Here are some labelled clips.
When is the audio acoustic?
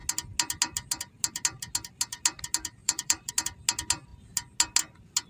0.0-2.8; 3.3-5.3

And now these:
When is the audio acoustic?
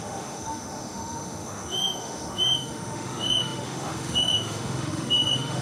none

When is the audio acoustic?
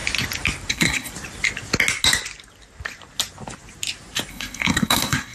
0.0-0.7; 1.1-4.3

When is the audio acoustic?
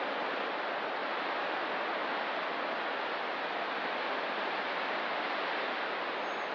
0.0-6.5